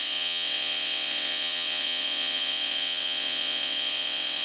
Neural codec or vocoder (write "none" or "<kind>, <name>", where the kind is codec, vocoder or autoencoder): vocoder, WaveNeXt